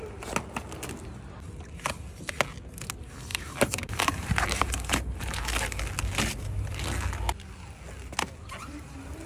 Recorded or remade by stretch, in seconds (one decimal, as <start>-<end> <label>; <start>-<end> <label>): 0.0-3.3 recorded; 3.3-5.4 remade; 5.4-9.3 recorded

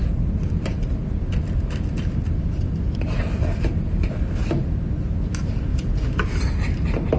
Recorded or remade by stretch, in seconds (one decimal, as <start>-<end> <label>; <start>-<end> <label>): 0.0-2.6 remade; 2.6-5.7 recorded; 5.7-6.5 remade; 6.5-7.2 recorded

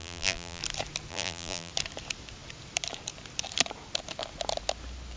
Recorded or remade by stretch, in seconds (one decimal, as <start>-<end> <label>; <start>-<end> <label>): 0.0-0.6 remade; 0.6-1.1 recorded; 1.1-1.7 remade; 1.7-5.2 recorded

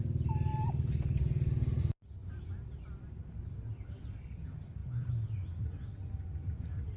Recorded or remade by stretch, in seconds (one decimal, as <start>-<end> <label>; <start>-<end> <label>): 0.0-4.8 recorded; 4.8-6.1 remade; 6.1-7.0 recorded

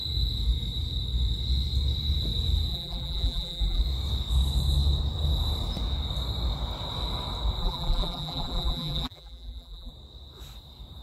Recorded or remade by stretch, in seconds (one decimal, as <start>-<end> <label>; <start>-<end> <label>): 0.0-2.7 recorded; 2.7-3.8 remade; 3.8-7.6 recorded; 7.6-9.9 remade; 9.9-11.0 recorded